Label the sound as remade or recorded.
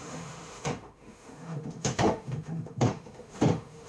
remade